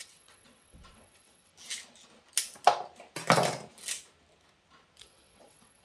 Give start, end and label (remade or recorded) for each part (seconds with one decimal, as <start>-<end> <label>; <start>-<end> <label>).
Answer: 0.0-1.5 remade; 1.5-5.0 recorded; 5.0-5.8 remade